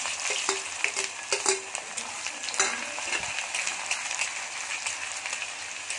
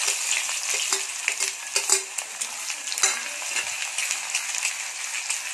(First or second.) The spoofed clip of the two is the first